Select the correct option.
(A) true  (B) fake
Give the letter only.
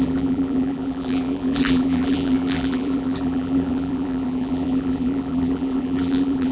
B